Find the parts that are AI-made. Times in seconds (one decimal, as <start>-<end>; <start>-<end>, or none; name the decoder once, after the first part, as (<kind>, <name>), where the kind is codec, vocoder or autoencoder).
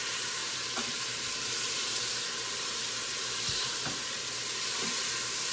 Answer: 0.0-5.5 (vocoder, BigVGAN v2)